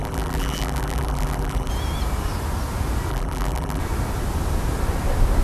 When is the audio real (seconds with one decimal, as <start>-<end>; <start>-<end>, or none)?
1.7-3.1; 3.8-5.4

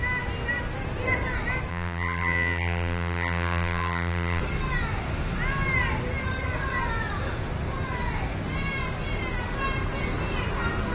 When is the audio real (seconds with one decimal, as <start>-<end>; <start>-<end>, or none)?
0.0-1.7; 4.4-10.9

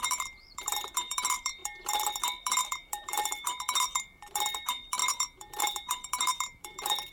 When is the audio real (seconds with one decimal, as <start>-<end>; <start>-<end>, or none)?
none

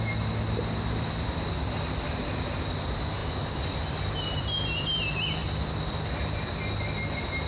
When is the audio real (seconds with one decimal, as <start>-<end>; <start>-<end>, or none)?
0.0-3.2; 5.0-7.5